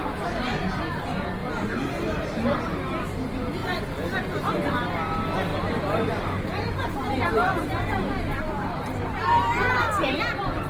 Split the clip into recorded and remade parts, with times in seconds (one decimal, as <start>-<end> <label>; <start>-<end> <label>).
0.0-1.4 recorded; 1.4-2.6 remade; 2.6-5.5 recorded; 5.5-10.2 remade; 10.2-10.7 recorded